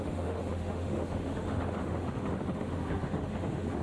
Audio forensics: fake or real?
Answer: fake